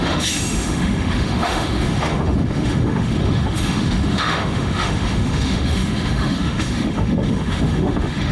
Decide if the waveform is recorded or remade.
remade